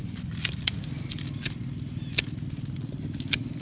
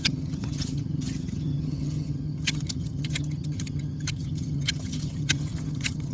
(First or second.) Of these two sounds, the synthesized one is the second